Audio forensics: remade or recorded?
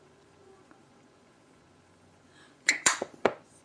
remade